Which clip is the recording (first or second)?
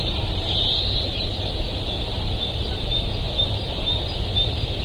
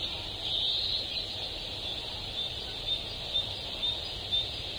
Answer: second